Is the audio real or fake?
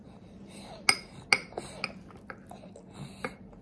real